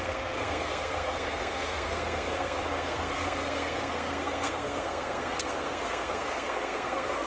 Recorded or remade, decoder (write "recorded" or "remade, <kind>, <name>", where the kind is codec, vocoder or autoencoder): remade, codec, SNAC